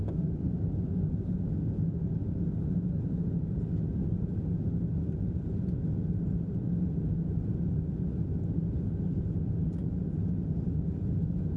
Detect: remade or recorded recorded